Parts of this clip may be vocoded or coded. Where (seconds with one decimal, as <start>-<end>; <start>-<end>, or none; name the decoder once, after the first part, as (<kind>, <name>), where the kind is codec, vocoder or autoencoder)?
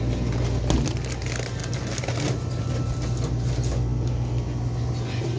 none